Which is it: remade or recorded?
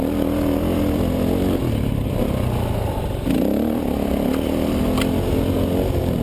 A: recorded